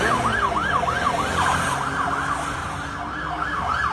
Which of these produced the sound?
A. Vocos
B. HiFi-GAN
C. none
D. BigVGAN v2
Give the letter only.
C